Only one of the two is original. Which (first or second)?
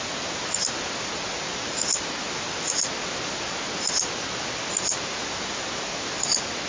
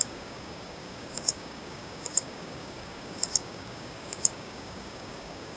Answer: first